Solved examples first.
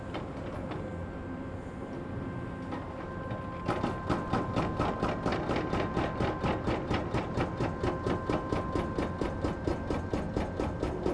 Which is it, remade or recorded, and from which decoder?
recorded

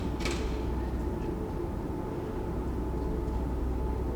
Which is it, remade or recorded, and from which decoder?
recorded